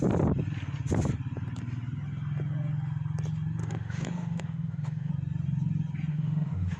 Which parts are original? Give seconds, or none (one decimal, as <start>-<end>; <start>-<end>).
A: 0.0-3.6; 5.1-6.1